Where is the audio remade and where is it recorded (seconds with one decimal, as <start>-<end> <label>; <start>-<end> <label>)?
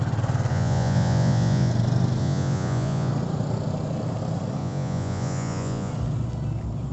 0.0-0.5 recorded; 0.5-1.7 remade; 1.7-2.2 recorded; 2.2-3.1 remade; 3.1-4.6 recorded; 4.6-5.9 remade; 5.9-6.9 recorded